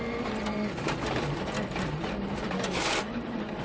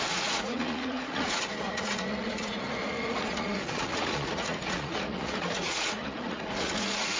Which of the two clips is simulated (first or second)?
second